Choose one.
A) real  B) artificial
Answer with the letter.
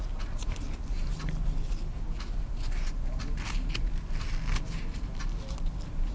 A